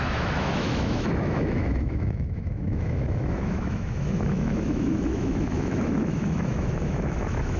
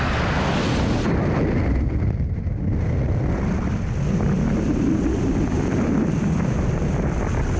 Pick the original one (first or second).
second